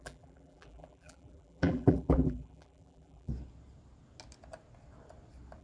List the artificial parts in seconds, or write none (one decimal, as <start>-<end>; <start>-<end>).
0.0-3.3